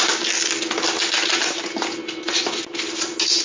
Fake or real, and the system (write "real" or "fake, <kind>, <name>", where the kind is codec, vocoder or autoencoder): real